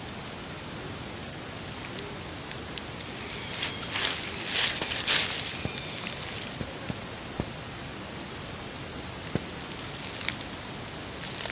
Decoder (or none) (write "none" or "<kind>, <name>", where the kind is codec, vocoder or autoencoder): none